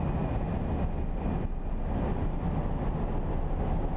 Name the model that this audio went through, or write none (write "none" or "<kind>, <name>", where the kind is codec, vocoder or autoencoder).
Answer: none